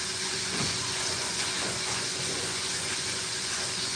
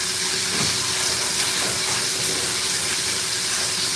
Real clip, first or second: second